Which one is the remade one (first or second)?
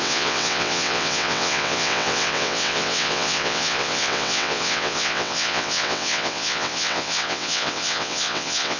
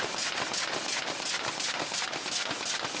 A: first